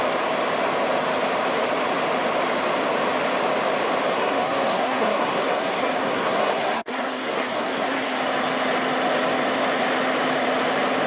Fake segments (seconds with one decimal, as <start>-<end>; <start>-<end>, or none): 4.1-8.2